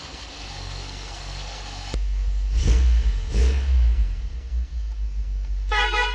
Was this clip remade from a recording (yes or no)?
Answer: yes